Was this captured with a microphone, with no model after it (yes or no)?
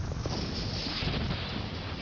yes